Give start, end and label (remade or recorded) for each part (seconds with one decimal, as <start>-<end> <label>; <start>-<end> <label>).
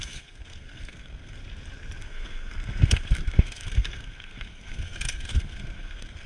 0.0-1.4 remade; 1.4-2.0 recorded; 2.0-6.3 remade